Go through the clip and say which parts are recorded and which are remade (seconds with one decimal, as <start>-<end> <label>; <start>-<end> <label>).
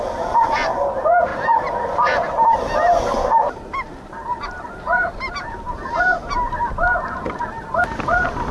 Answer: 0.0-8.5 recorded